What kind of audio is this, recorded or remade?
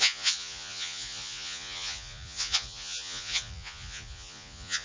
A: remade